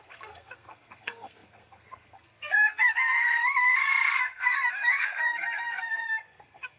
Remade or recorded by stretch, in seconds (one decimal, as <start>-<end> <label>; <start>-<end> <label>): 0.0-6.8 remade